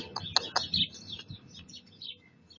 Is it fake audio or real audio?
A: real